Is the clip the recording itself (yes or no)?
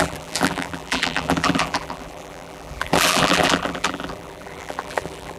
no